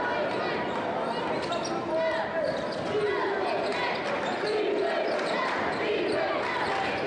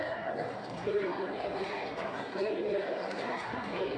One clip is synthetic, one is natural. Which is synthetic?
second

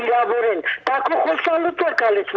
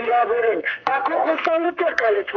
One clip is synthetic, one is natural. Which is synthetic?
second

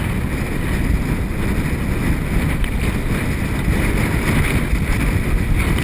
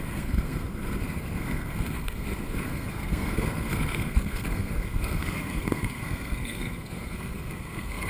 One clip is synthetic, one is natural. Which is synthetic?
second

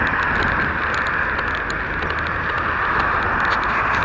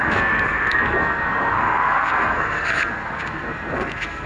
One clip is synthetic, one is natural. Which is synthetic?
second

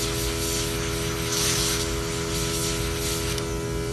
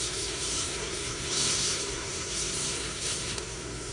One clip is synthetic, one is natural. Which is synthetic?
second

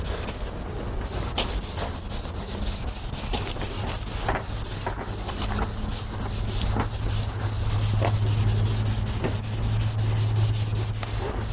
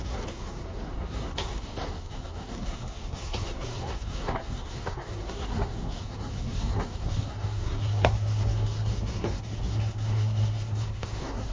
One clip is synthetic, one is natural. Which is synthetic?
second